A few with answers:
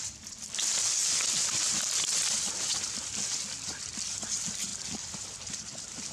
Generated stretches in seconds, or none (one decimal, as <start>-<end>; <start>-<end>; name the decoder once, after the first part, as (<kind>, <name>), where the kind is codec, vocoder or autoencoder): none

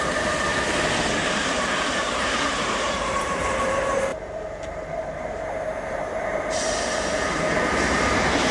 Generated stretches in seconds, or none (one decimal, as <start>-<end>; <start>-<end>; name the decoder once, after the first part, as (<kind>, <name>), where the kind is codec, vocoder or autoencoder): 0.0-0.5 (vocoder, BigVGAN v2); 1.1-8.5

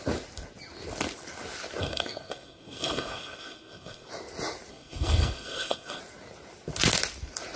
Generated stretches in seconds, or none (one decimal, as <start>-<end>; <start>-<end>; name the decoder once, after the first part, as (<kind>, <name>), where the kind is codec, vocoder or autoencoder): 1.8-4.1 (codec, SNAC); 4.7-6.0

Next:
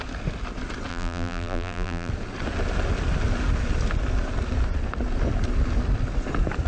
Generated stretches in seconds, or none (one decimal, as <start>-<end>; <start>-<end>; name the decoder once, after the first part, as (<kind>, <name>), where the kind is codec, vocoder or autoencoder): 0.9-2.1 (vocoder, BigVGAN v2)

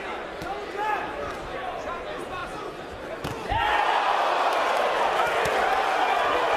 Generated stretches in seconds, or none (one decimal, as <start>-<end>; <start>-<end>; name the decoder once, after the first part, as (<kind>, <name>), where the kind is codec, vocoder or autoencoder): none

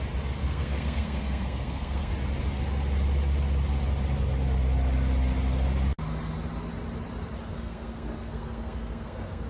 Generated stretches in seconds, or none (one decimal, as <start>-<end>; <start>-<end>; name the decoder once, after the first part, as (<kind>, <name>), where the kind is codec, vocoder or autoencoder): 0.4-2.1 (codec, SNAC); 7.5-9.5

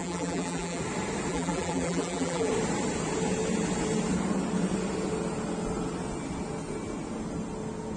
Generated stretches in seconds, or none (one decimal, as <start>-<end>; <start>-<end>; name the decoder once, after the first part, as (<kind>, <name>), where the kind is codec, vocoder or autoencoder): 0.0-0.8 (vocoder, BigVGAN v2); 1.3-2.5

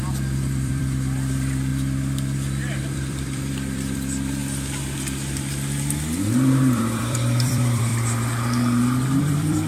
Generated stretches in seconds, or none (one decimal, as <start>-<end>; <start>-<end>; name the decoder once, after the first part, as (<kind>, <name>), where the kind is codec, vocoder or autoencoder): 0.0-1.7 (vocoder, BigVGAN v2); 2.8-4.4; 6.2-7.9; 9.2-9.7